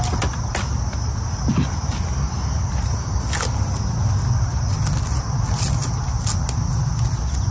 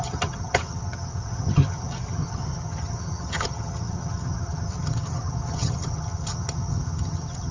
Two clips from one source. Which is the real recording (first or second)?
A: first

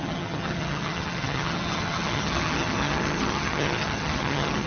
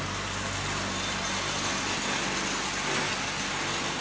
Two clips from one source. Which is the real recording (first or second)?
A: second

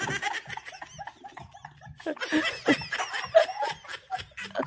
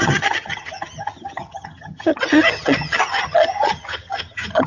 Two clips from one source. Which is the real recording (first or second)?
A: first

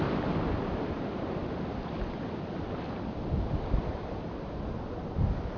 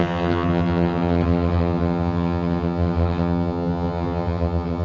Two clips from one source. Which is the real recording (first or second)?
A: first